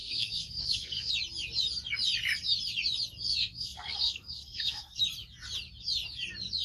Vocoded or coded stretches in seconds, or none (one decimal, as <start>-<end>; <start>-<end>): 0.0-1.1; 3.4-5.0